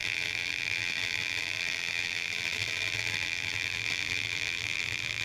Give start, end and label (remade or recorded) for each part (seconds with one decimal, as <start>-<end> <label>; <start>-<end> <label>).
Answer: 0.0-5.2 remade